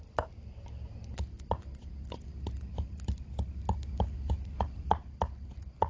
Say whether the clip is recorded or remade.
recorded